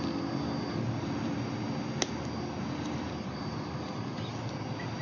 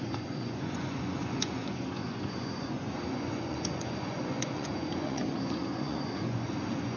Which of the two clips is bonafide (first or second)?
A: first